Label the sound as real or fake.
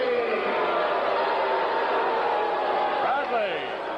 real